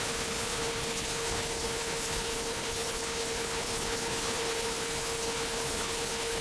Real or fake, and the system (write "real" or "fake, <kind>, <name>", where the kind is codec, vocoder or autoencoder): fake, codec, HILCodec